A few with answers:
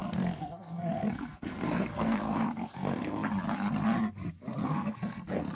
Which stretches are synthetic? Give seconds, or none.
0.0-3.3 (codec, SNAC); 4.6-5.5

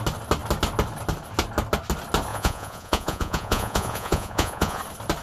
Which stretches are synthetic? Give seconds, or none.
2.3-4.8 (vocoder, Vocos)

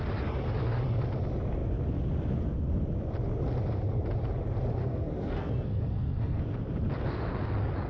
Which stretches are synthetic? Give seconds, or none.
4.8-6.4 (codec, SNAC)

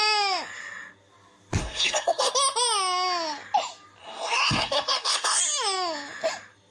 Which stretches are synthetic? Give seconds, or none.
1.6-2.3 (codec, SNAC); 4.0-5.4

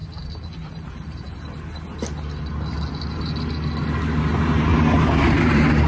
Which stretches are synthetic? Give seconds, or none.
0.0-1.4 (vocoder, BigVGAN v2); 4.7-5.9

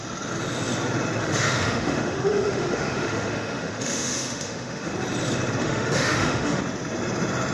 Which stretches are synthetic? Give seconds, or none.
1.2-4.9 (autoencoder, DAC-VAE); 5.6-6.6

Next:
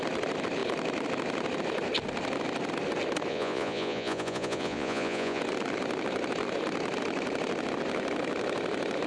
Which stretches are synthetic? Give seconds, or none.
3.3-5.4 (vocoder, Vocos)

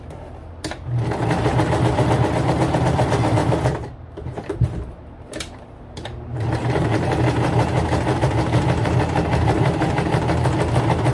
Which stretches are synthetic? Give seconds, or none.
0.0-7.7 (vocoder, BigVGAN v2); 8.2-11.1